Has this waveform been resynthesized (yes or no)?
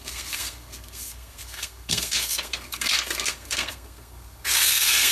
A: yes